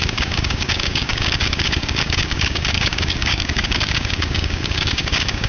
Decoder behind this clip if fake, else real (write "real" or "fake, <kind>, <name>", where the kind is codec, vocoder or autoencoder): fake, codec, DAC